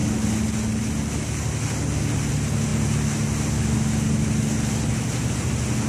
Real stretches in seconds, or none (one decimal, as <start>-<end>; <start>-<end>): 0.0-5.9